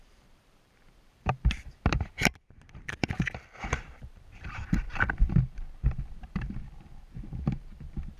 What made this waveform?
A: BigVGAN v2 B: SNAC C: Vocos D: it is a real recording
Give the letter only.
A